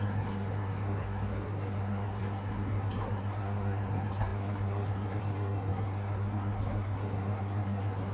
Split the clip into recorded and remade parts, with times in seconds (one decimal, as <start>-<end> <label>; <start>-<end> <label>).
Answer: 0.0-8.1 remade